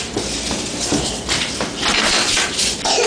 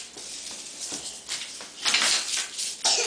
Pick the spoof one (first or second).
first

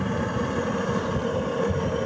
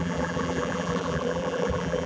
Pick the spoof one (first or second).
second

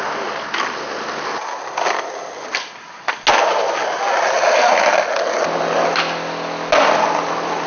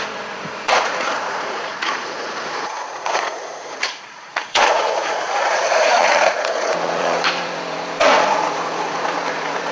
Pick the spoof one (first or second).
second